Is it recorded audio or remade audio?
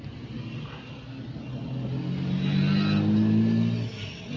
recorded